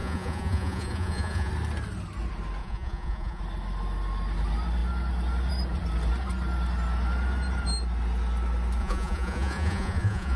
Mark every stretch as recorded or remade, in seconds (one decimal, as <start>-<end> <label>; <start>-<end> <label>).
0.0-1.5 remade; 1.5-2.6 recorded; 2.6-3.4 remade; 3.4-8.8 recorded; 8.8-10.4 remade